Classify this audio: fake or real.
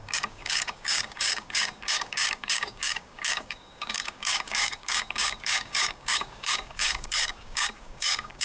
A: fake